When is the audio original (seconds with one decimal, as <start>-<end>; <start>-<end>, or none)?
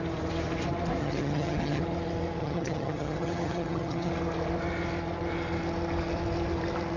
0.0-1.0; 1.8-2.4; 4.1-7.0